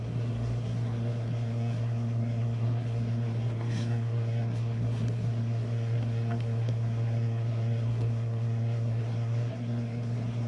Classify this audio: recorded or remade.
remade